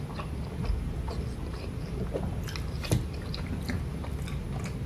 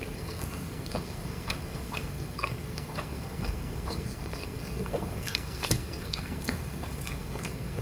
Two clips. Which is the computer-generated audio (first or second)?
second